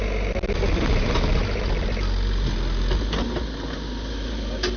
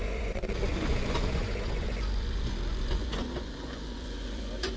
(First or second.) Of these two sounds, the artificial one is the second